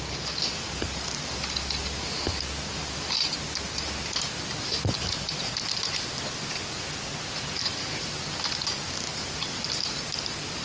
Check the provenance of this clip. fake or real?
real